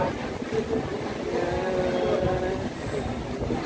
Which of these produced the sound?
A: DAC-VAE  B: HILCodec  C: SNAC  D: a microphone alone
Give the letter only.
D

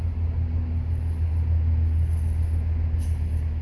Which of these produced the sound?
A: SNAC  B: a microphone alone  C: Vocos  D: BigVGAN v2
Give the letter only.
B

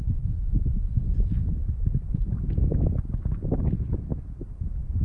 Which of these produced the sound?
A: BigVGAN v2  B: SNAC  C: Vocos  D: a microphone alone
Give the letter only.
D